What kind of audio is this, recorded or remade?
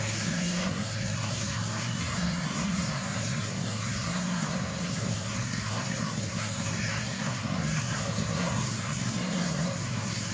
remade